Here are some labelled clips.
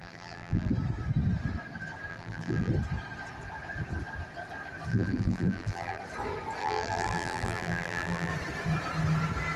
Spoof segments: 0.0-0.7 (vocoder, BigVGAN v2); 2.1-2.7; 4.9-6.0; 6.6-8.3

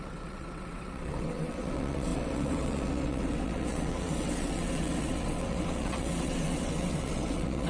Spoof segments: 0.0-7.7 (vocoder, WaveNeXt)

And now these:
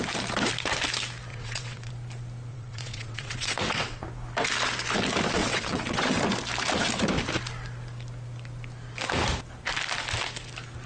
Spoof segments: 1.3-1.9 (vocoder, WaveNeXt); 2.5-4.0; 5.4-6.2

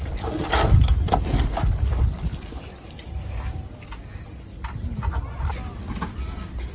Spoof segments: none

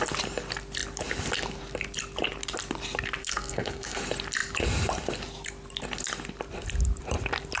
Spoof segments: 3.2-4.0 (codec, SNAC)

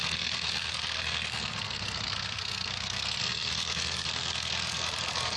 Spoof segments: 0.0-5.4 (codec, SNAC)

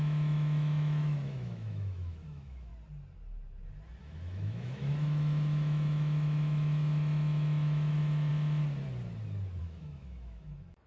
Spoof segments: 0.0-2.7 (autoencoder, DAC-VAE); 4.0-8.3; 9.6-10.9

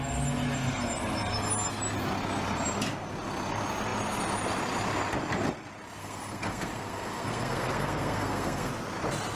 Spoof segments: 6.0-8.7 (codec, SNAC)